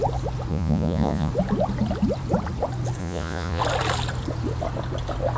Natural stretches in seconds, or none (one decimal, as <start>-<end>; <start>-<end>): 0.0-0.5; 1.3-3.0; 3.6-5.4